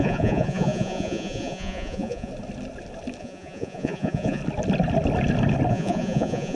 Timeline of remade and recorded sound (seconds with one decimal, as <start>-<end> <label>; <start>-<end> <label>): 0.0-2.3 remade; 2.3-3.2 recorded; 3.2-4.4 remade; 4.4-5.7 recorded; 5.7-6.5 remade